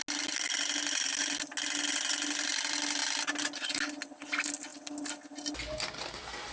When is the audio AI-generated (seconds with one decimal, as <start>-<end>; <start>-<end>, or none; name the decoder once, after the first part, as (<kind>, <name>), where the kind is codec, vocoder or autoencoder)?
none